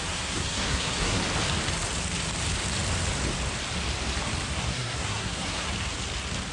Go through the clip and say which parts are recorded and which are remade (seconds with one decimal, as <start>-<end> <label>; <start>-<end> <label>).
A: 0.0-1.2 remade; 1.2-4.6 recorded; 4.6-5.7 remade; 5.7-6.5 recorded